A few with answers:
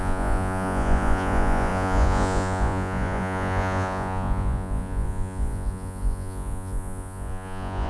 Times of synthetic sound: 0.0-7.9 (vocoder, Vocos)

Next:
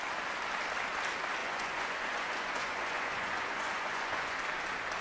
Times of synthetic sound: 1.4-4.4 (vocoder, Vocos)

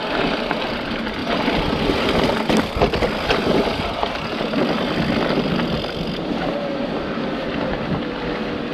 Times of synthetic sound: none

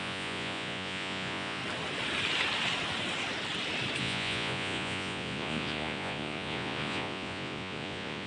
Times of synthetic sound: 0.0-1.6 (vocoder, Vocos); 4.0-8.3

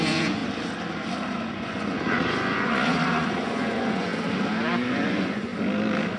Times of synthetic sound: 0.0-0.4 (vocoder, Vocos); 1.5-4.1; 4.9-5.5

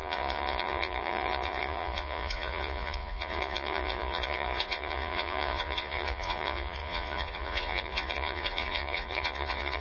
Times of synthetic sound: 0.0-9.8 (vocoder, Vocos)

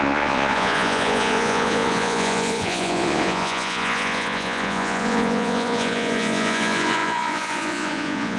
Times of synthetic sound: 0.0-8.4 (vocoder, Vocos)